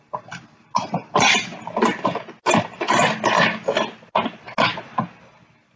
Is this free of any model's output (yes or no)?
yes